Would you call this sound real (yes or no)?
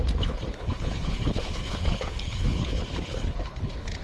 no